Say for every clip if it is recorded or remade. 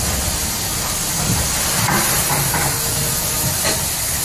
recorded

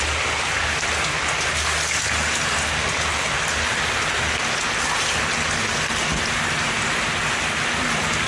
recorded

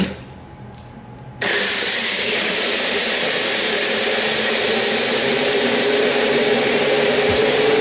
remade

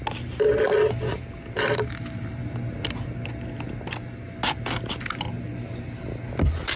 recorded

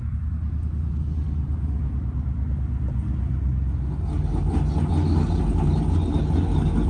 recorded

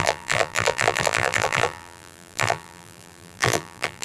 remade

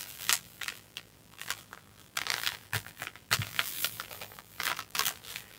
remade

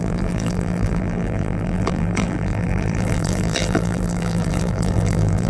remade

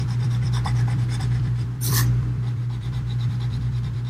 remade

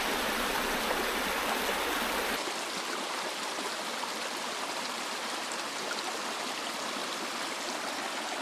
recorded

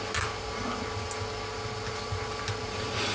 recorded